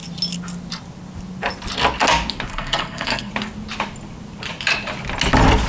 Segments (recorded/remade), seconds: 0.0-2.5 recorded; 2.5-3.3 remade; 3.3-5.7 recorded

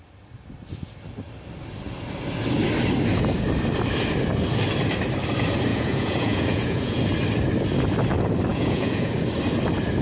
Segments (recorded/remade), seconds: 0.0-5.7 recorded; 5.7-7.0 remade; 7.0-8.5 recorded; 8.5-9.1 remade; 9.1-10.0 recorded

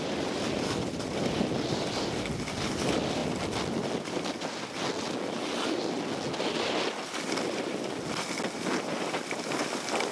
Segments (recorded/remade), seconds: 0.0-10.1 recorded

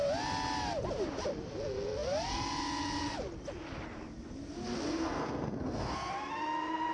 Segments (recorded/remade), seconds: 0.0-4.9 recorded; 4.9-6.1 remade; 6.1-6.9 recorded

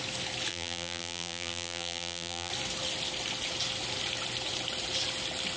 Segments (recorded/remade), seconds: 0.0-0.5 recorded; 0.5-2.5 remade; 2.5-5.6 recorded

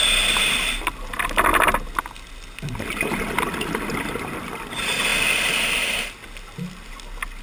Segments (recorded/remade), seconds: 0.0-7.4 recorded

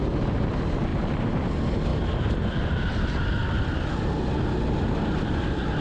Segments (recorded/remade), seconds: 0.0-0.5 remade; 0.5-5.8 recorded